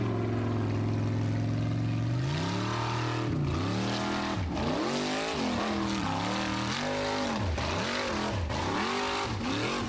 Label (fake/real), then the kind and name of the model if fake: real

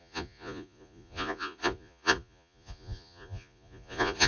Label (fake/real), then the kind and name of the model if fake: fake, vocoder, Vocos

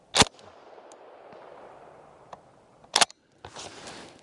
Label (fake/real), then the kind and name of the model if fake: real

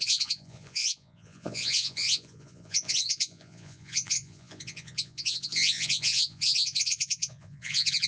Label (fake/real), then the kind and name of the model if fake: fake, vocoder, Vocos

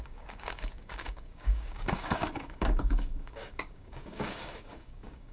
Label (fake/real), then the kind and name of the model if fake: fake, codec, DAC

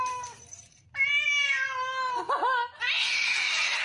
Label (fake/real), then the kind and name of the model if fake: real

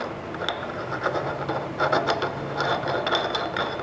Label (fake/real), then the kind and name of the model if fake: real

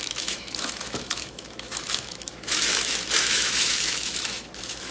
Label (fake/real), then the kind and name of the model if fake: fake, autoencoder, DAC-VAE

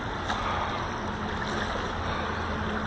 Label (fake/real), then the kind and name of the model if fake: real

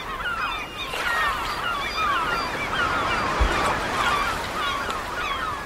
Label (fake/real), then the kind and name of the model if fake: real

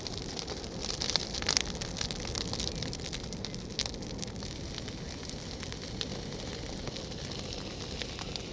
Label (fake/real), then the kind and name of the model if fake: real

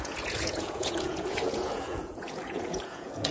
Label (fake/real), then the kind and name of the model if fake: fake, vocoder, Vocos